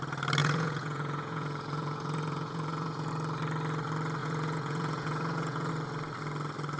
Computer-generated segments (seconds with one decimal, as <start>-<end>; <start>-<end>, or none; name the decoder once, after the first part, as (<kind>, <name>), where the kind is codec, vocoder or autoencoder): 0.4-3.1 (vocoder, Vocos); 4.2-5.7